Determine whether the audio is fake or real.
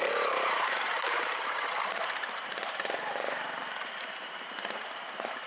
fake